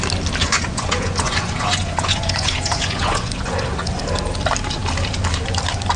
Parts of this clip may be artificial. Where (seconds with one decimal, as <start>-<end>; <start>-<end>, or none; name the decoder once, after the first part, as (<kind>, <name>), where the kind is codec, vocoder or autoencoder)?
0.4-4.0 (vocoder, Vocos)